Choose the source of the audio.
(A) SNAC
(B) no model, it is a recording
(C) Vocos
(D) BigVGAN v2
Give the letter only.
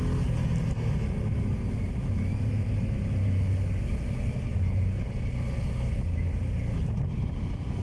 B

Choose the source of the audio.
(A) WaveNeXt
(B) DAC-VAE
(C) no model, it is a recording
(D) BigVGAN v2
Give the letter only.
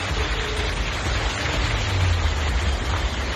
C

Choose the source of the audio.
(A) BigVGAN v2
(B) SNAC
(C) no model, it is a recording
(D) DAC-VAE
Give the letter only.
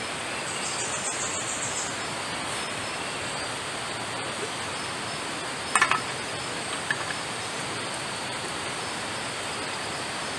C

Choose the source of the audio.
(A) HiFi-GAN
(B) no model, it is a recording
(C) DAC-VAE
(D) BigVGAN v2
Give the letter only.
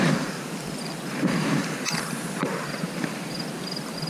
B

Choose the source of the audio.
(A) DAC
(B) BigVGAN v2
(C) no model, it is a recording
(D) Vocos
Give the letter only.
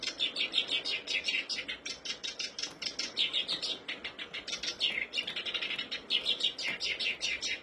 C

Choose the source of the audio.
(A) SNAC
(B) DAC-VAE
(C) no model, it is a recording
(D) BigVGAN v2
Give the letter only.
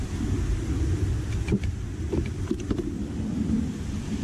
C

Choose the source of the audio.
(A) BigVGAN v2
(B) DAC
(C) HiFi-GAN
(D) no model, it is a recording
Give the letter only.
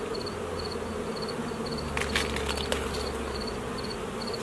D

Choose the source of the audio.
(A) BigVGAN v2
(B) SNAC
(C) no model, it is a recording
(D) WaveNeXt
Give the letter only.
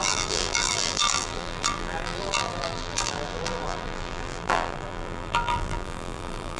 A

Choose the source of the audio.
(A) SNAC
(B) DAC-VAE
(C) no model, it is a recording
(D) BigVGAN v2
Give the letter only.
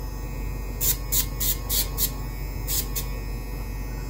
C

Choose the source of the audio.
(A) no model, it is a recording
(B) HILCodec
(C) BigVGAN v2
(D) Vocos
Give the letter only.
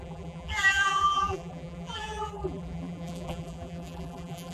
C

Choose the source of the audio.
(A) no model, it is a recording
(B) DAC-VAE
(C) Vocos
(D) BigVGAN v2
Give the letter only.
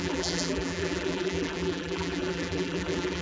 D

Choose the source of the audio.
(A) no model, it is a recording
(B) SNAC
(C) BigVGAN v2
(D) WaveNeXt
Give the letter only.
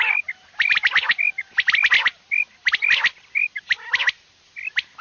A